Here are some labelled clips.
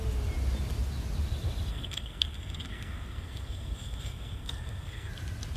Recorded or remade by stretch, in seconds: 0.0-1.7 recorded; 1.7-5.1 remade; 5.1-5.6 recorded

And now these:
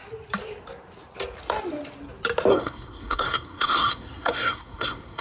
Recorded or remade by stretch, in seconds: 0.0-2.5 recorded; 2.5-5.2 remade

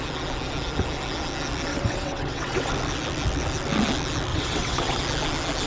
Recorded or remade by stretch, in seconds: 0.0-1.7 recorded; 1.7-2.7 remade; 2.7-4.3 recorded; 4.3-5.0 remade; 5.0-5.7 recorded

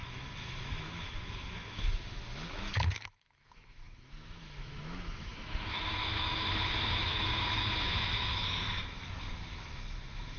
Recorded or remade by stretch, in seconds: 0.0-10.4 remade

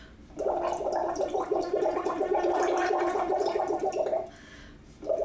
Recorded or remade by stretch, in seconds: 0.0-1.0 recorded; 1.0-3.1 remade; 3.1-5.2 recorded

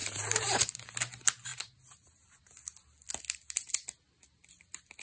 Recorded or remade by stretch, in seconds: 0.0-0.9 remade; 0.9-5.0 recorded